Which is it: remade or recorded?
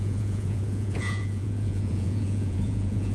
remade